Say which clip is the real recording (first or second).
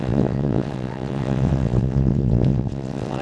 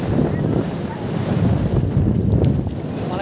second